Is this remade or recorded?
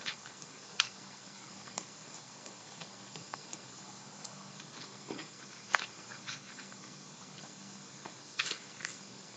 remade